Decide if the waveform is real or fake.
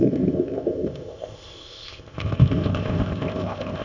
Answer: fake